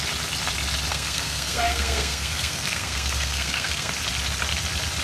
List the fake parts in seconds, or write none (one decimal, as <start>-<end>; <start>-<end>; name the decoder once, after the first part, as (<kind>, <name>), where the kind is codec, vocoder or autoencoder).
0.9-3.9 (codec, SNAC)

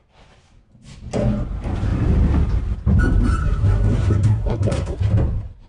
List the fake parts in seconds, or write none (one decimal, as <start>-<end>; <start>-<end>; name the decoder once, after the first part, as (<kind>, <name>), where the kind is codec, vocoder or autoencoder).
3.4-5.0 (codec, SNAC)